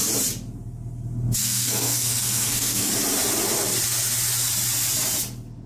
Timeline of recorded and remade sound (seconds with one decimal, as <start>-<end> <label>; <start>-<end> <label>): 0.0-1.4 recorded; 1.4-2.9 remade; 2.9-5.7 recorded